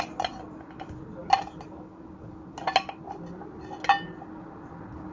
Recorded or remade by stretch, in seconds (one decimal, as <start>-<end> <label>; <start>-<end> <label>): 0.0-5.1 recorded